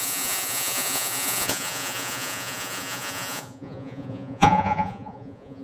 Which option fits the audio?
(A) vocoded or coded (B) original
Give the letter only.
A